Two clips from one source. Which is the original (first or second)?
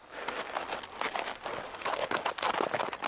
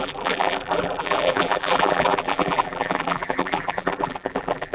first